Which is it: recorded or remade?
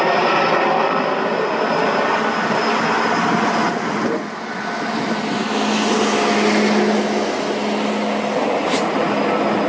recorded